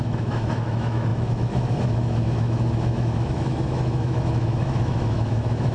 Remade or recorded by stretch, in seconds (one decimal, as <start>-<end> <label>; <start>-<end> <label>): 0.0-5.7 remade